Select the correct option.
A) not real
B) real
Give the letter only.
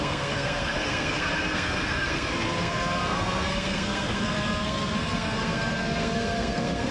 A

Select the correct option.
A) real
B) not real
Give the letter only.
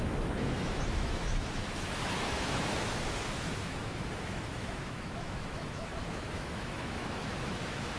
B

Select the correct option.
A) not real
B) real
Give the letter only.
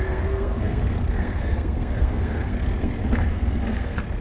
A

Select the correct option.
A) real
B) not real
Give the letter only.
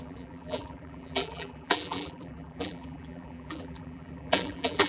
B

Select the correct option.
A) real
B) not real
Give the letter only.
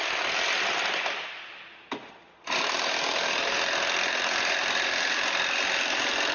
B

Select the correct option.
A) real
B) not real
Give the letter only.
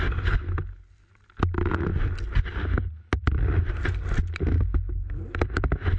A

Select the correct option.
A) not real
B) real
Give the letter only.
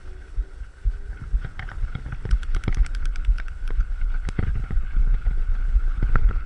A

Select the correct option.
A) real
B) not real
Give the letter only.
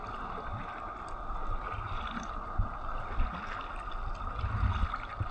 A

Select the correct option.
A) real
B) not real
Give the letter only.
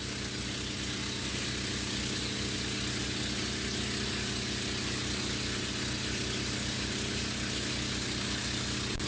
A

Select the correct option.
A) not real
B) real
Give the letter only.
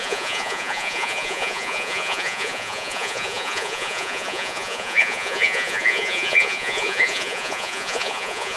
A